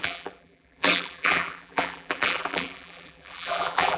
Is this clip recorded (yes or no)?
no